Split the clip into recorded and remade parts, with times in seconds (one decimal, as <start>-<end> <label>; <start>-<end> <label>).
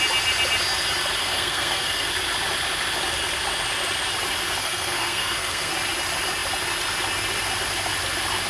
0.0-1.2 recorded; 1.2-2.1 remade; 2.1-4.6 recorded; 4.6-5.7 remade; 5.7-8.5 recorded